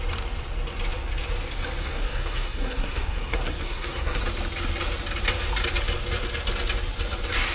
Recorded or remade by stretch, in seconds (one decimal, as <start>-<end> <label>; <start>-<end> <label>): 0.0-1.8 recorded; 1.8-4.2 remade; 4.2-7.5 recorded